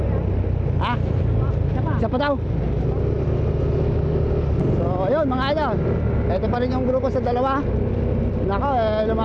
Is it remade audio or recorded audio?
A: recorded